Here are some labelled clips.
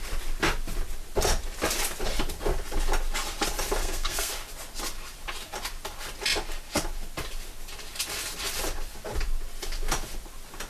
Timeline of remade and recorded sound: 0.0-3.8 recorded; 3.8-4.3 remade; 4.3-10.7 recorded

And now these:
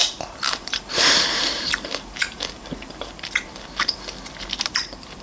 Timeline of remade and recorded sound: 0.0-3.1 remade; 3.1-5.2 recorded

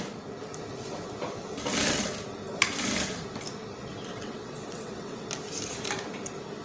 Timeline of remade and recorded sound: 0.0-4.1 recorded; 4.1-5.3 remade; 5.3-6.6 recorded

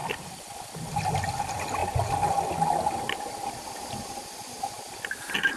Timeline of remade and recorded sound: 0.0-5.6 recorded

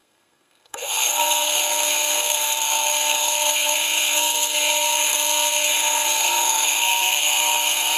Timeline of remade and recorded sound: 0.0-8.0 remade

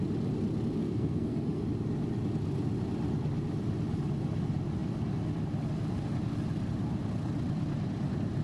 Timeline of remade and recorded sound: 0.0-0.8 recorded; 0.8-1.6 remade; 1.6-8.4 recorded

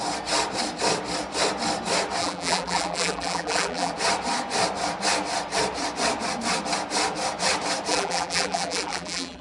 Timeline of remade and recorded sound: 0.0-2.2 recorded; 2.2-3.9 remade; 3.9-7.9 recorded; 7.9-9.4 remade